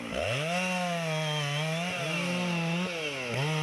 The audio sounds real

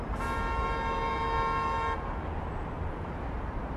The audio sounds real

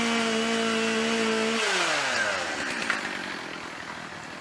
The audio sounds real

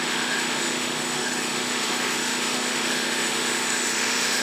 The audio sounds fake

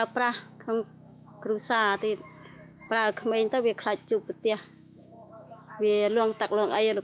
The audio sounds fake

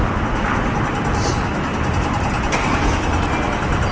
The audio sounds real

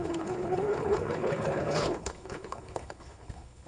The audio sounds fake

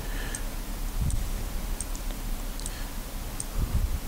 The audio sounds real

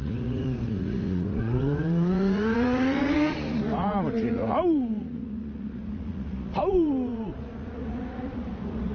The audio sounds fake